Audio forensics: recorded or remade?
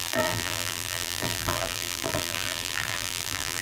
remade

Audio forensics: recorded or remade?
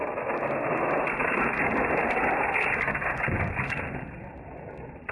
recorded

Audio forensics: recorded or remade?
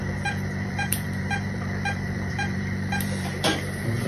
remade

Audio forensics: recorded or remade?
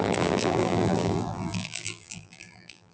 remade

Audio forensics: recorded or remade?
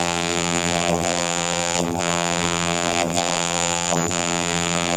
remade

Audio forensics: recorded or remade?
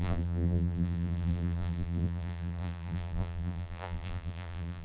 remade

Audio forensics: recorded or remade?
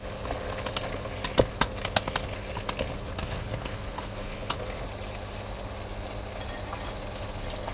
recorded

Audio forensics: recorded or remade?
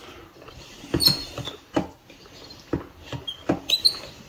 remade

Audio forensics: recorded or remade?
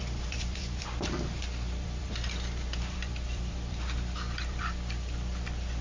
remade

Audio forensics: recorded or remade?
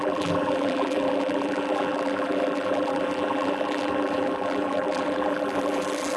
remade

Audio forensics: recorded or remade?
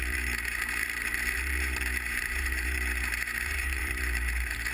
remade